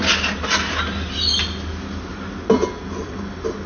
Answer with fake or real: real